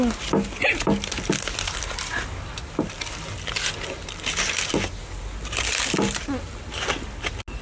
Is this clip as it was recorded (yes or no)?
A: yes